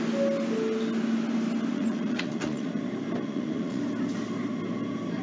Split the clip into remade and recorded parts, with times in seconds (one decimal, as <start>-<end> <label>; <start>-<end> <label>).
0.0-1.7 recorded; 1.7-2.7 remade; 2.7-3.2 recorded; 3.2-3.8 remade; 3.8-5.2 recorded